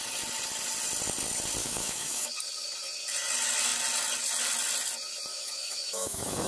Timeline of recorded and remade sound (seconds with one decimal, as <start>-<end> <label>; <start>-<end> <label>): 0.0-1.6 recorded; 1.6-2.3 remade; 2.3-5.3 recorded; 5.3-6.5 remade